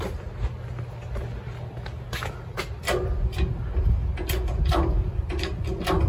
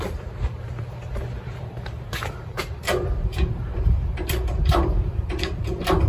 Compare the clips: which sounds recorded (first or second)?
first